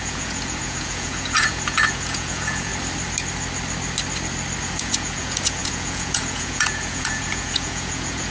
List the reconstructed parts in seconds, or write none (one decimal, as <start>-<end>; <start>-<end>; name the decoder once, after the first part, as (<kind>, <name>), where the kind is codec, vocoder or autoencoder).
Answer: 0.0-2.7 (vocoder, Vocos); 4.6-8.3